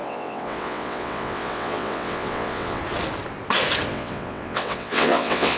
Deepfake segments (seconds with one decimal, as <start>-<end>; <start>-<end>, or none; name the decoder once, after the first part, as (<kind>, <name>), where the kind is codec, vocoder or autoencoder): 0.0-2.8 (vocoder, WaveNeXt); 3.9-5.6